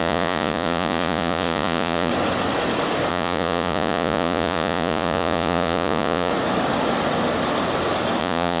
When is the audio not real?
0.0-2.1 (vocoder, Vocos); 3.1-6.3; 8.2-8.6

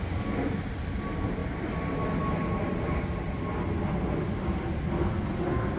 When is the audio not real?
none

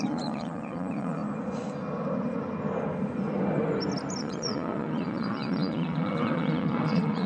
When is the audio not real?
0.0-1.2 (vocoder, Vocos); 4.2-7.3

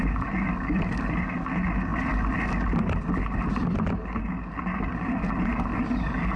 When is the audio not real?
none

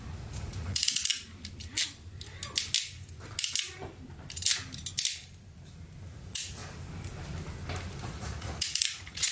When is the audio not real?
0.0-1.1 (vocoder, Vocos); 6.1-6.6; 8.0-9.3

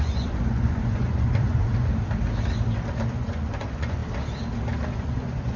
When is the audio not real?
0.0-1.9 (vocoder, Vocos); 3.1-4.0; 5.0-5.6